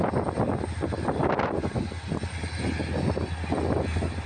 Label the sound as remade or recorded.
recorded